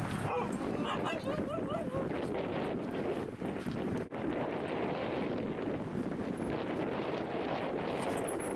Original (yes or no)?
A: yes